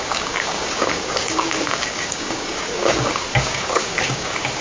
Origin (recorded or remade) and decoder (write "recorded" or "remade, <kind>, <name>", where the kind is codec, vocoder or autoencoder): remade, codec, DAC